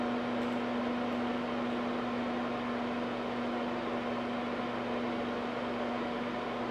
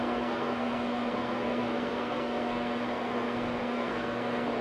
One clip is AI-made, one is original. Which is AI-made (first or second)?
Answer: second